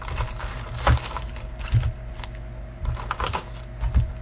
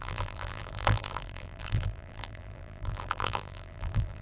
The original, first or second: first